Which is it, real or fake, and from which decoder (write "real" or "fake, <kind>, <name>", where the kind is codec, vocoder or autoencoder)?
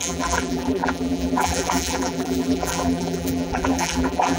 fake, vocoder, BigVGAN v2